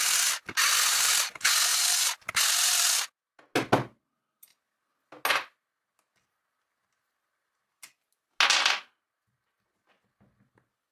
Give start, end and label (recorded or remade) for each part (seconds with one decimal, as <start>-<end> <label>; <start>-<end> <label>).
0.0-10.9 recorded